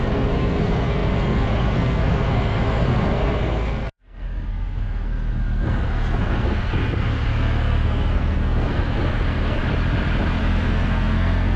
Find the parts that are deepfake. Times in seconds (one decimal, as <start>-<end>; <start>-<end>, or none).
0.0-9.6; 10.4-11.6